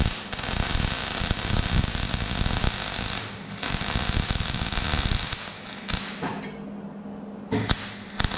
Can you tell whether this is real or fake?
real